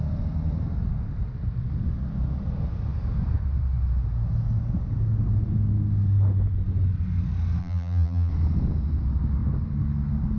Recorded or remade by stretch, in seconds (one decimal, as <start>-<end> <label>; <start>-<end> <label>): 0.0-7.6 recorded; 7.6-8.3 remade; 8.3-10.4 recorded